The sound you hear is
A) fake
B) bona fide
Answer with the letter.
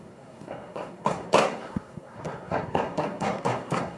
A